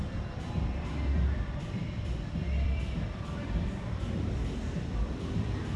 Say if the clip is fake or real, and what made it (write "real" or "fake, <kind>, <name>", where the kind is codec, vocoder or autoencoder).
fake, vocoder, BigVGAN v2